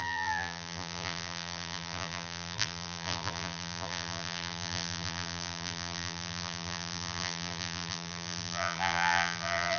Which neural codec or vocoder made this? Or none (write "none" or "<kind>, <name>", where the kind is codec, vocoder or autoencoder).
vocoder, BigVGAN v2